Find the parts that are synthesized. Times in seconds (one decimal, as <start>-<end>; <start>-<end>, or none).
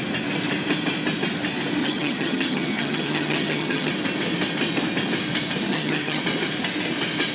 1.8-3.9; 5.7-6.2